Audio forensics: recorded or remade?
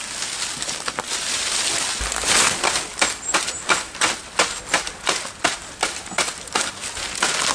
recorded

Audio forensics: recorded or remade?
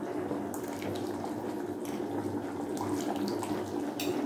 recorded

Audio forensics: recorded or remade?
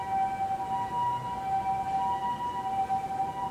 recorded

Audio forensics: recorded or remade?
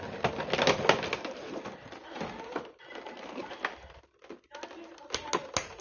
recorded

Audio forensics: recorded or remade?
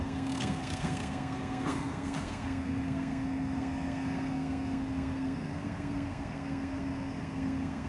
remade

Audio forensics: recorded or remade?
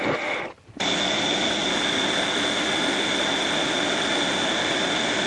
recorded